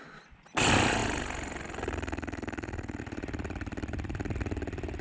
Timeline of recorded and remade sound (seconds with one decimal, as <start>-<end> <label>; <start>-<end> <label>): 0.0-5.0 recorded